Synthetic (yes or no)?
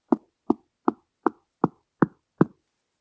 no